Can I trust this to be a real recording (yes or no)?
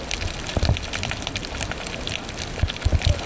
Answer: yes